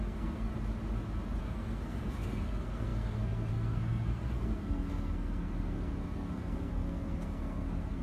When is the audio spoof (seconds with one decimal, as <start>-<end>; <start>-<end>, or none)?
0.0-0.5; 1.4-8.0

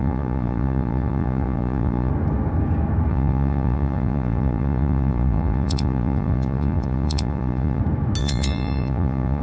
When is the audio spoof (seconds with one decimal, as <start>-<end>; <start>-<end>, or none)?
0.0-2.1; 3.1-7.8; 8.2-9.4

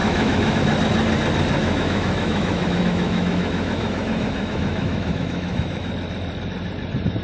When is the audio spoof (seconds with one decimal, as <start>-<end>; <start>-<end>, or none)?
0.0-0.6; 1.6-5.9

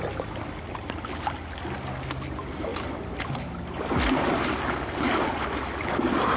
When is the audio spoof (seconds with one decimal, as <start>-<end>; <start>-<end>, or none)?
none

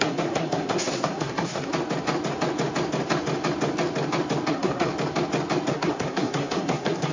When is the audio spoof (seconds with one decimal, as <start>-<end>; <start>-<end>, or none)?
0.0-1.7; 4.5-4.9; 5.7-7.1

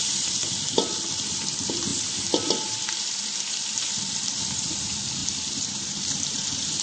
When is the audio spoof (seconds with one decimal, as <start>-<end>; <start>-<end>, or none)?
0.0-6.8

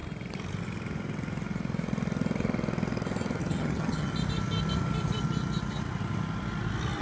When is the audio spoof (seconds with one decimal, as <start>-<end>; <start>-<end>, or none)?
3.4-4.1

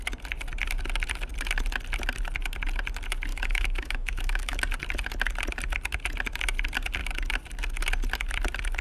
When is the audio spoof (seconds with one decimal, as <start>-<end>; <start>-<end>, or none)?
3.3-4.6